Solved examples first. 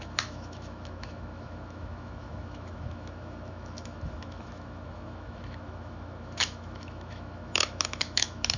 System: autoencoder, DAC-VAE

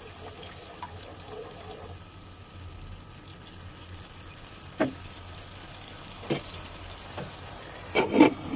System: none